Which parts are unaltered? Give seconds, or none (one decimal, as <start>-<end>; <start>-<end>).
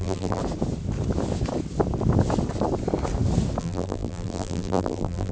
0.4-3.6